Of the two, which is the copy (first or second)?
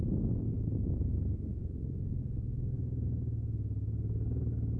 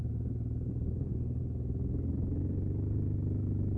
first